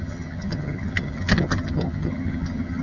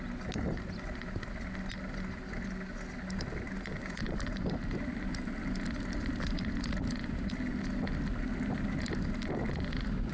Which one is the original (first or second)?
second